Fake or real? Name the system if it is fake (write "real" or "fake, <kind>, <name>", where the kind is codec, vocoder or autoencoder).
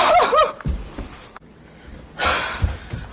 real